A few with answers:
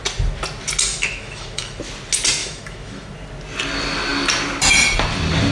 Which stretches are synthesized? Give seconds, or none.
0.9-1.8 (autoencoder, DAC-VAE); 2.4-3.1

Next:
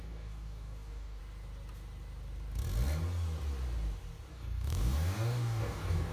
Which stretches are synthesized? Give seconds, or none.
0.0-1.2 (codec, DAC); 4.3-6.1

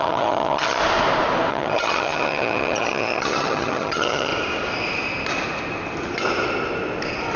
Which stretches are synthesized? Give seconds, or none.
0.0-0.8 (vocoder, HiFi-GAN); 1.5-4.3

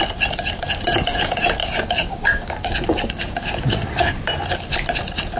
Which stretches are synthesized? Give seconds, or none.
1.6-4.2 (codec, DAC)